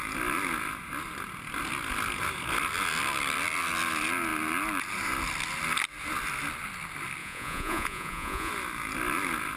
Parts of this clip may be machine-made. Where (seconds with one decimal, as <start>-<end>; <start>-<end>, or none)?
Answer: 7.2-8.5